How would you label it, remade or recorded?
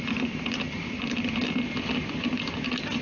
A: recorded